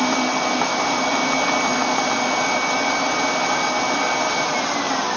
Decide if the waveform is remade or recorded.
recorded